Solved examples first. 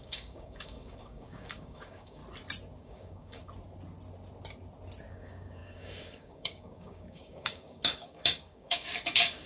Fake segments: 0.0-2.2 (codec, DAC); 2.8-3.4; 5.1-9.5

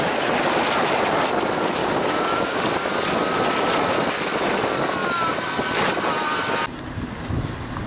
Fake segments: 1.8-2.6 (codec, DAC)